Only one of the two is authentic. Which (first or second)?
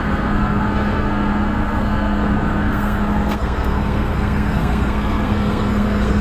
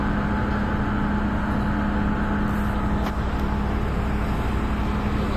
second